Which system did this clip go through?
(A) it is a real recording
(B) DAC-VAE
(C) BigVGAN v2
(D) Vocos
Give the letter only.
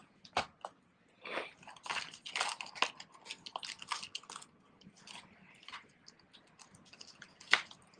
A